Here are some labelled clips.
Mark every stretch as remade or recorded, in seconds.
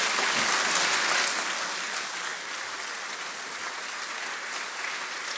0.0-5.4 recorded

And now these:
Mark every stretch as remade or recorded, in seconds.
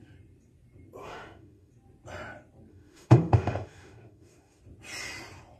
0.0-1.0 recorded; 1.0-1.7 remade; 1.7-2.7 recorded; 2.7-4.6 remade; 4.6-5.6 recorded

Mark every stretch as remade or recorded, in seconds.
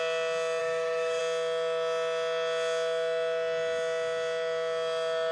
0.0-0.6 recorded; 0.6-1.2 remade; 1.2-5.3 recorded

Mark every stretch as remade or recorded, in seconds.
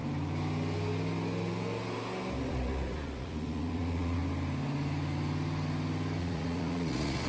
0.0-2.5 recorded; 2.5-4.2 remade; 4.2-6.2 recorded; 6.2-7.3 remade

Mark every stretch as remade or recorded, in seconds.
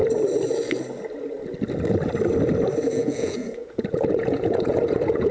0.0-2.9 recorded; 2.9-5.3 remade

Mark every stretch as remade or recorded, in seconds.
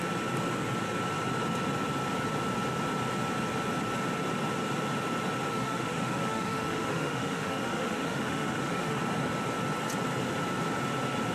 0.0-5.5 recorded; 5.5-9.0 remade; 9.0-11.3 recorded